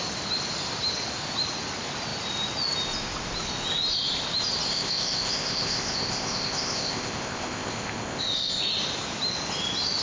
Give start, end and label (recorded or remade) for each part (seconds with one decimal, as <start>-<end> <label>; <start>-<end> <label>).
0.0-4.7 recorded; 4.7-8.6 remade; 8.6-10.0 recorded